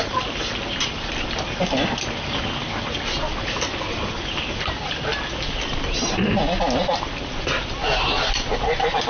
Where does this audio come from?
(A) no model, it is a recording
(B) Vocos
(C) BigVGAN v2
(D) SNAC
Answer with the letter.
A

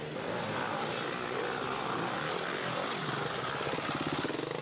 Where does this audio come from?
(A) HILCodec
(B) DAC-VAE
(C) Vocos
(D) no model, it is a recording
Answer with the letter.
D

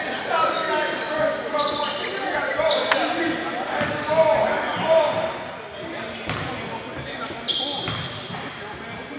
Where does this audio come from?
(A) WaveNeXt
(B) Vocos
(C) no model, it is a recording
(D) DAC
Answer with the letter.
C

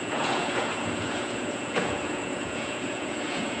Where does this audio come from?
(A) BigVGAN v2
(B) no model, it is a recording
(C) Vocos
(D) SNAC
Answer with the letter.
C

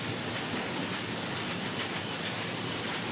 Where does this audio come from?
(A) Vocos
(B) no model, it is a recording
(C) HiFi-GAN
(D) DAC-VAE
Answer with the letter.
B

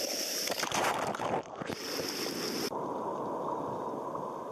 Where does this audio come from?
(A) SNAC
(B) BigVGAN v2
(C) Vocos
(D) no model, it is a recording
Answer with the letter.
D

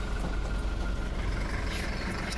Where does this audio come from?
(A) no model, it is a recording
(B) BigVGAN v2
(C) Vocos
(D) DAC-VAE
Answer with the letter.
A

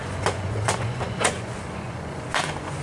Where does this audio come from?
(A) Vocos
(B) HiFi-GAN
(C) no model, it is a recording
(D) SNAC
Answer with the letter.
A